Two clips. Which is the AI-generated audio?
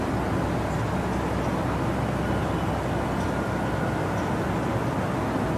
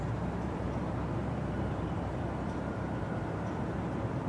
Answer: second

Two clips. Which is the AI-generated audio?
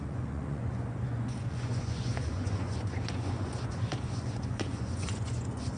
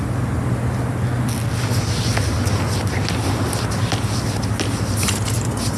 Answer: first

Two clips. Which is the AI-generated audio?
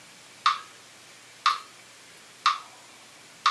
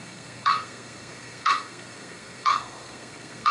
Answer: second